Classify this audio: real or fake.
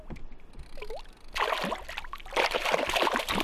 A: real